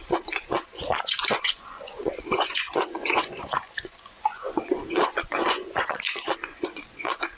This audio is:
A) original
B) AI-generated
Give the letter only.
B